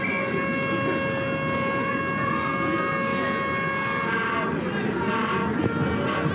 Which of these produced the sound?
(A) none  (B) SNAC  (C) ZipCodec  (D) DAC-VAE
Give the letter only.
A